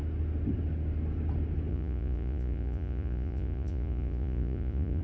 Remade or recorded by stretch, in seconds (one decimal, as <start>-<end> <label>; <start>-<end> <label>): 0.0-1.7 recorded; 1.7-5.0 remade